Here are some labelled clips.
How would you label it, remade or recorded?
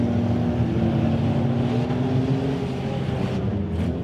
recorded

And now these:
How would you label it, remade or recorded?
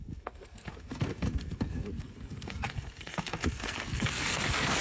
remade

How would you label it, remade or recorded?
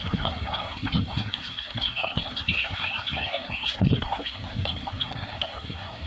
remade